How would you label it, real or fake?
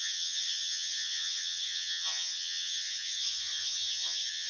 fake